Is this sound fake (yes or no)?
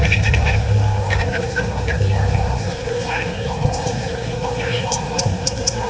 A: yes